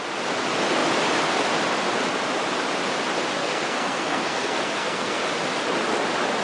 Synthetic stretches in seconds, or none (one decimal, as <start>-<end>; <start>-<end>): 3.4-5.2

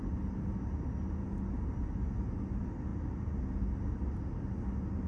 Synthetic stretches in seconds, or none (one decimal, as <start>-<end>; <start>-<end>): none

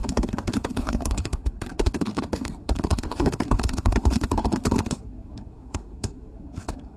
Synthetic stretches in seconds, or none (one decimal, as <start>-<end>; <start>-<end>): 0.0-7.0

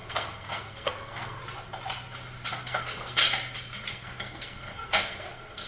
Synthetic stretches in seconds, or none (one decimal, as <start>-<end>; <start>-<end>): 0.0-1.4; 2.5-3.2; 3.9-5.7

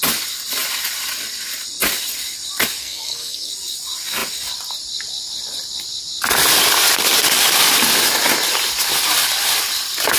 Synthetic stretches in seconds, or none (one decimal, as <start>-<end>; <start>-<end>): 2.8-3.5

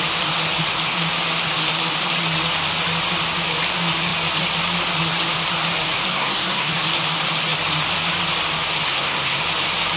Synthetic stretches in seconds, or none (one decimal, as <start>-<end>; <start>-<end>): 6.1-6.7; 8.9-9.4

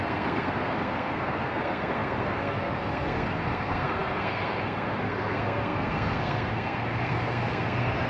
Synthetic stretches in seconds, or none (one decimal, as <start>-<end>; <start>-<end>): 0.0-8.1